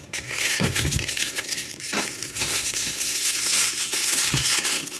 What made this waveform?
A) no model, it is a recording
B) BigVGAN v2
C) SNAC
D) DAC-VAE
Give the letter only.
C